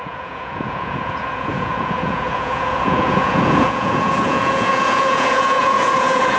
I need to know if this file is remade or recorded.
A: remade